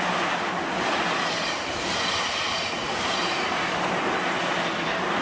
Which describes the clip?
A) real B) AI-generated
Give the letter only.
A